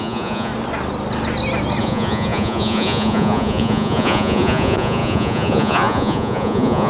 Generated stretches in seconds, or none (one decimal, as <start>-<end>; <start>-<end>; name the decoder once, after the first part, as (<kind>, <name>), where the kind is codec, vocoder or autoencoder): 0.0-0.5 (vocoder, Vocos); 1.8-6.9